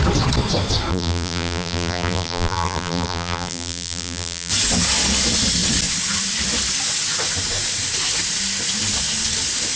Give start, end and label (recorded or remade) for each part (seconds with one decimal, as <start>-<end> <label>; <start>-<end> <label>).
0.0-0.9 recorded; 0.9-4.5 remade; 4.5-9.8 recorded